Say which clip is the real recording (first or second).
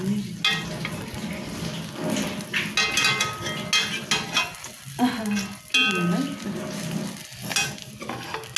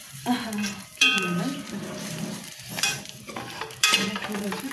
first